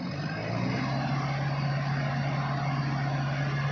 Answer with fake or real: real